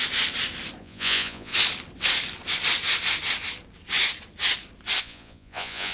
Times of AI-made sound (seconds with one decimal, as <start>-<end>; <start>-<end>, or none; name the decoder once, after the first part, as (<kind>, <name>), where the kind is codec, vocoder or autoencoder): 0.8-1.5 (vocoder, Vocos); 5.0-5.9